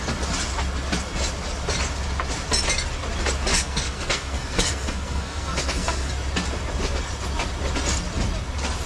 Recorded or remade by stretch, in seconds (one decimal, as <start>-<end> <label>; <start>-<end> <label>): 0.0-3.5 recorded; 3.5-6.1 remade; 6.1-8.9 recorded